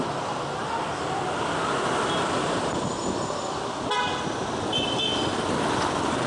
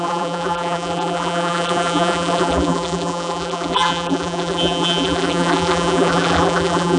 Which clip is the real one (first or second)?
first